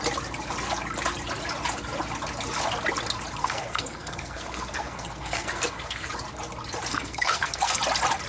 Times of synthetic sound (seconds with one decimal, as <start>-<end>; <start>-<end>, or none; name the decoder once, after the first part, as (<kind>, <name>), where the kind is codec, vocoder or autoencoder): 3.4-6.1 (codec, SNAC); 6.9-7.8